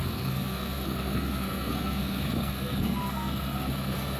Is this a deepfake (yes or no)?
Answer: yes